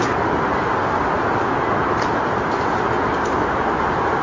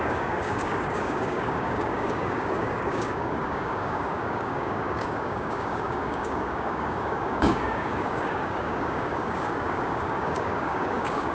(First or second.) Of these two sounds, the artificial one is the second